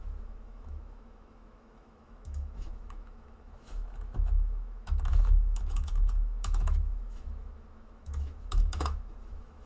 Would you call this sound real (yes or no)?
no